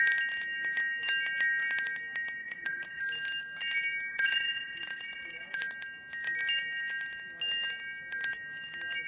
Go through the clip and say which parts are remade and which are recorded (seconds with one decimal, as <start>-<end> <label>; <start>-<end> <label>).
0.0-2.4 recorded; 2.4-3.0 remade; 3.0-4.1 recorded; 4.1-5.6 remade; 5.6-9.1 recorded

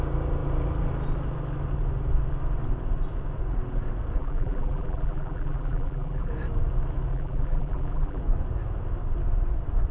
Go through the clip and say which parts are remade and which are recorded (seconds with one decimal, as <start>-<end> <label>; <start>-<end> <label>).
0.0-4.2 recorded; 4.2-6.3 remade; 6.3-7.1 recorded; 7.1-8.2 remade; 8.2-9.9 recorded

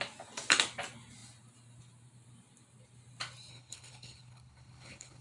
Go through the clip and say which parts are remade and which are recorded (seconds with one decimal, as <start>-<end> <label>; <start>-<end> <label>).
0.0-3.5 recorded; 3.5-5.2 remade

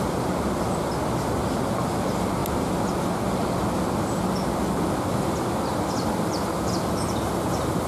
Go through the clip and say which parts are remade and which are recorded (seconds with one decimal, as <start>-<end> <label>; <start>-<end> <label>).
0.0-7.9 recorded